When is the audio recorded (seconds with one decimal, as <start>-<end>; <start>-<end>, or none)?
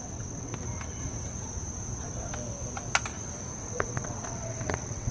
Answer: 0.5-3.6